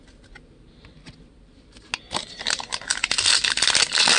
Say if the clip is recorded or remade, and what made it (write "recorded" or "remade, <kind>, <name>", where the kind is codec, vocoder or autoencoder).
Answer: recorded